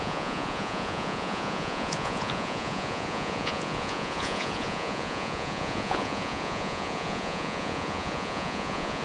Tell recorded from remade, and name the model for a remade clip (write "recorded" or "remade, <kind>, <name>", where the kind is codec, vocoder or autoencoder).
remade, vocoder, Vocos